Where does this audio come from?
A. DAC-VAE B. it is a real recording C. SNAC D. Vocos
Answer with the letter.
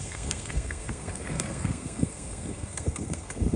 C